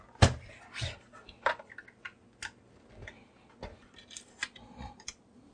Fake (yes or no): no